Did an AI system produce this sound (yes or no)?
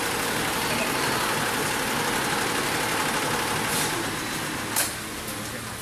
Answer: no